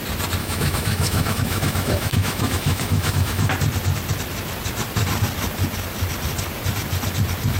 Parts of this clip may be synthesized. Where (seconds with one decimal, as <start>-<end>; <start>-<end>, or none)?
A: 0.4-3.5